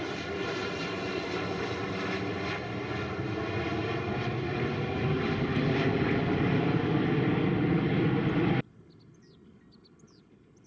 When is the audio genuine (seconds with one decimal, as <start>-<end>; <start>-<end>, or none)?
0.0-10.7